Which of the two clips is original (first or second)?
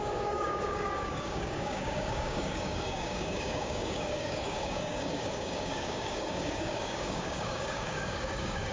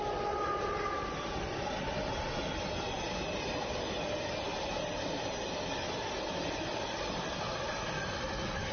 second